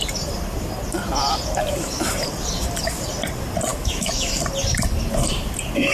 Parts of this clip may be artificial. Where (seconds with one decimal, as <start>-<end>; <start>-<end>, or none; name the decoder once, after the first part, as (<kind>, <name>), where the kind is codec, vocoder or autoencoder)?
3.7-4.4 (autoencoder, DAC-VAE)